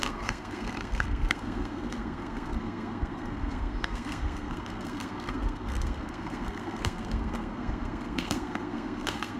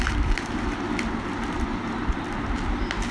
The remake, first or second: first